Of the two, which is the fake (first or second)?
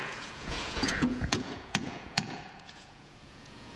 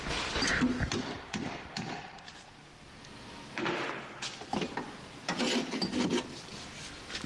first